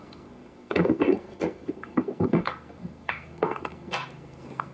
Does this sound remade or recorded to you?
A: remade